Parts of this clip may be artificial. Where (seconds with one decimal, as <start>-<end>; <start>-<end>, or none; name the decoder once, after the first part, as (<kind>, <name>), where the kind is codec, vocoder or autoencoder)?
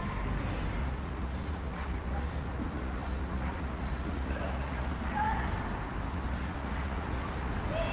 0.8-5.5 (vocoder, Vocos); 6.1-7.5